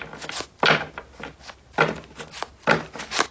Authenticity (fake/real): real